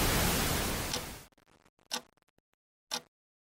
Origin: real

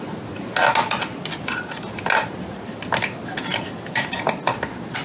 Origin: real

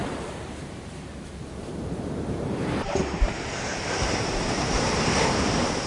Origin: fake